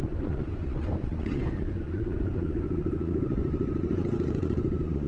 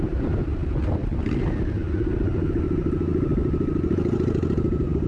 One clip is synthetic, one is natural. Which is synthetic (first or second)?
first